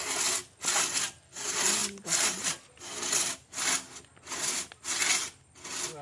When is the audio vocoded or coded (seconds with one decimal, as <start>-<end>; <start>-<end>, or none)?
none